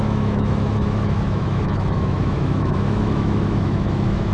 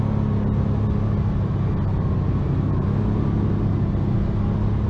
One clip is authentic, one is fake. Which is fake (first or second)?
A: first